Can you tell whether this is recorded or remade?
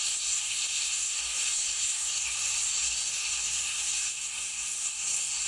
remade